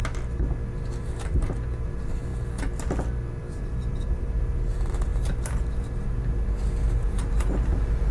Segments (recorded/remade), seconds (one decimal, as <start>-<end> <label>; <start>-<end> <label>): 0.0-1.0 recorded; 1.0-2.3 remade; 2.3-3.6 recorded; 3.6-8.1 remade